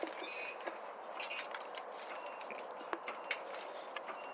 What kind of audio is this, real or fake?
real